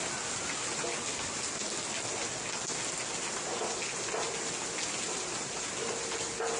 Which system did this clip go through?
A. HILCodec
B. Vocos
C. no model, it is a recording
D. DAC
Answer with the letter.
C